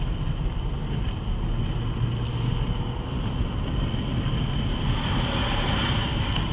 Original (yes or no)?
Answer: yes